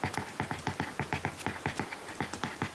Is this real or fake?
real